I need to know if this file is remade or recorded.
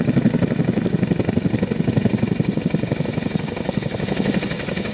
recorded